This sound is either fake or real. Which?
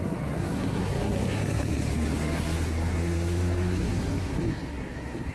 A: fake